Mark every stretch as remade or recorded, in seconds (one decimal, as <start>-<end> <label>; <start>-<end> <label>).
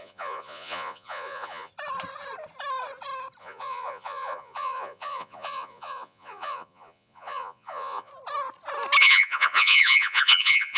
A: 0.0-1.7 remade; 1.7-3.4 recorded; 3.4-8.1 remade; 8.1-9.0 recorded; 9.0-10.8 remade